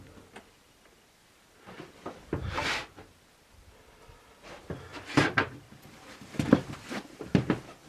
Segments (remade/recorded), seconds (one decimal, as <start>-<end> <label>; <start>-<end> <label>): 0.0-4.9 recorded; 4.9-7.5 remade; 7.5-7.9 recorded